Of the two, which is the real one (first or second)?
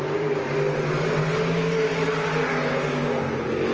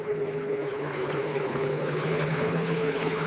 first